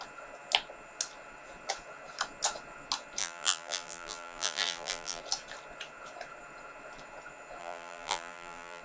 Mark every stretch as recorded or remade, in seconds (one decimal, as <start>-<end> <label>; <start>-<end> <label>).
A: 0.0-3.2 recorded; 3.2-5.2 remade; 5.2-7.6 recorded; 7.6-8.8 remade